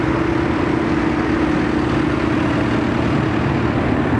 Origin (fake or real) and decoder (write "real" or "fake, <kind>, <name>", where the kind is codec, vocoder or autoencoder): real